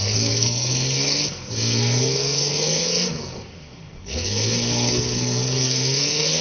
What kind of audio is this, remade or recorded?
remade